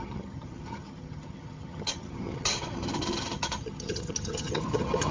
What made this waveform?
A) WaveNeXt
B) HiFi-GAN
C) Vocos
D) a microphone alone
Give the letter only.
B